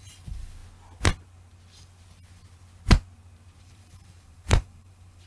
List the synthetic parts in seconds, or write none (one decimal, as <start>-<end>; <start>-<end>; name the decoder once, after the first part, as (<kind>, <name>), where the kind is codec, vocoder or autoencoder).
0.0-0.6 (vocoder, BigVGAN v2); 3.6-5.3